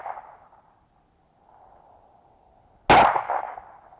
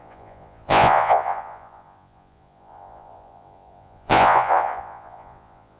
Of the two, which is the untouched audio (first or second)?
first